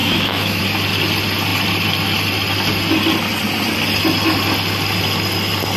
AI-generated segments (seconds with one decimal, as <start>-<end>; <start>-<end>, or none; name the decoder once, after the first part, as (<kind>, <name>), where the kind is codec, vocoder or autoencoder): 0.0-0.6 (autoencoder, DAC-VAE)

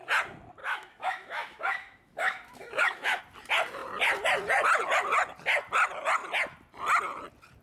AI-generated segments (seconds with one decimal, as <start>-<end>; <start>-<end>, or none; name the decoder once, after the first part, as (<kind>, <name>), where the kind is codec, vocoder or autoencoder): 0.6-3.2 (autoencoder, DAC-VAE)

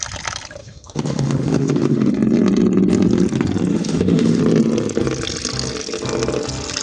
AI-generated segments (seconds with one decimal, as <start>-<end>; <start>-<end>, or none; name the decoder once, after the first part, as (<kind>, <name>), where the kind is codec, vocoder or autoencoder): 0.6-2.1 (autoencoder, DAC-VAE); 3.7-4.4

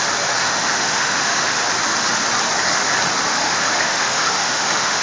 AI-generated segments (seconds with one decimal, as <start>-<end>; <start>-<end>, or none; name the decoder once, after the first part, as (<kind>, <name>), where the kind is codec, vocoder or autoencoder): 0.4-1.6 (autoencoder, DAC-VAE); 3.3-5.0

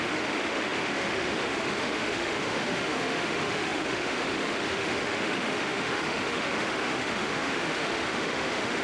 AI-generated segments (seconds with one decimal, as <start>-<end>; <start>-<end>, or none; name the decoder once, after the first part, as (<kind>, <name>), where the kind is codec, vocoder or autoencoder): 0.0-8.8 (autoencoder, DAC-VAE)

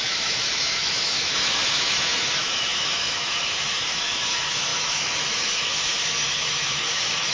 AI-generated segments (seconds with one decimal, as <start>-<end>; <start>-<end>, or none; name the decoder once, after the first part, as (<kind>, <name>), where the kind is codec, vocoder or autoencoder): 0.0-7.3 (autoencoder, DAC-VAE)

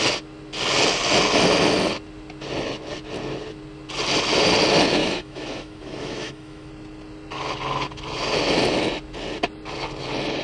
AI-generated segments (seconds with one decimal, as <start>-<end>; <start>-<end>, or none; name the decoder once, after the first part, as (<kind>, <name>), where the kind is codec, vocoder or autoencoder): 5.0-6.7 (autoencoder, DAC-VAE)

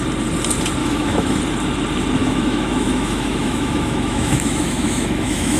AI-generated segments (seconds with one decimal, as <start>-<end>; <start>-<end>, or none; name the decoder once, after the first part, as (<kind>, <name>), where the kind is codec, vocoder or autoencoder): 0.8-1.4 (autoencoder, DAC-VAE); 2.2-5.6